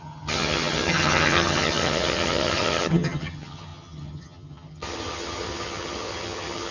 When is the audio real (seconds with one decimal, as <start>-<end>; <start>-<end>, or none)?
none